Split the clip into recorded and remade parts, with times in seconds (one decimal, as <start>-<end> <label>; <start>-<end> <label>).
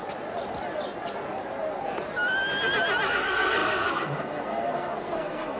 0.0-3.1 recorded; 3.1-5.6 remade